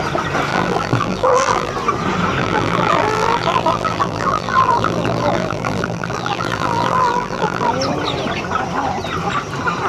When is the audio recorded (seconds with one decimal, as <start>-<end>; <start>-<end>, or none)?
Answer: 0.0-0.5; 1.7-2.4; 7.7-9.9